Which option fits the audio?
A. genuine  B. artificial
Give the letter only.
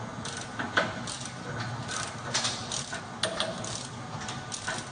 A